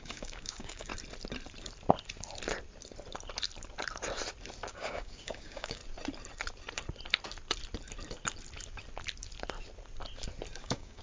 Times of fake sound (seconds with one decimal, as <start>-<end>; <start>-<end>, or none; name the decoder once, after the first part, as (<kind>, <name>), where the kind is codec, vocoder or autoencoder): 0.0-0.9 (codec, DAC); 4.7-5.8; 10.6-11.0